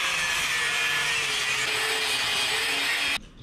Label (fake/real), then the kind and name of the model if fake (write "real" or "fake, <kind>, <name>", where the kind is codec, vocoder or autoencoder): real